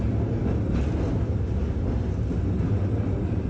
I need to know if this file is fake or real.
real